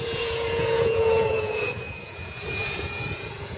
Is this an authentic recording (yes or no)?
no